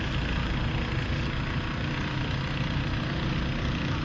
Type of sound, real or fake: real